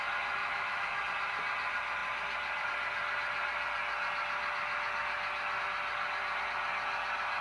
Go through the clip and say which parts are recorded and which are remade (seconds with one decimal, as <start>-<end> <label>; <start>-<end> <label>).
0.0-0.4 recorded; 0.4-1.0 remade; 1.0-7.4 recorded

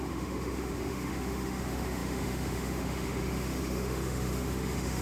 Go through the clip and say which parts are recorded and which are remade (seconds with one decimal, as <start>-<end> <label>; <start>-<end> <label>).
0.0-5.0 remade